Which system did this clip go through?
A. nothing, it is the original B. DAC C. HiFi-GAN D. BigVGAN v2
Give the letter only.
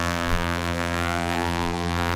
D